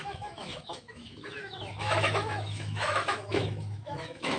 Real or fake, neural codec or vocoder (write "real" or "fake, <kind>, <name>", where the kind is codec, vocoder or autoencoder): fake, autoencoder, DAC-VAE